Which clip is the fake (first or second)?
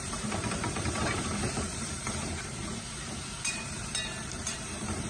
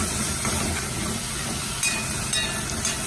first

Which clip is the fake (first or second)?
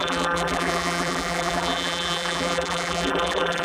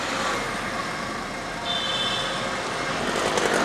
first